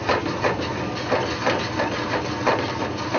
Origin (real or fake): real